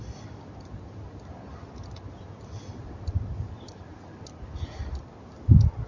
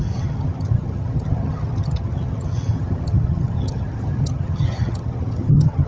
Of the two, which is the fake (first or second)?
second